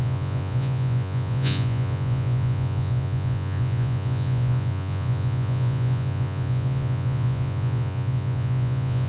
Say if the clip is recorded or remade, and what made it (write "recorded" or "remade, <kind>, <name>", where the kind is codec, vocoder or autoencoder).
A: remade, vocoder, Vocos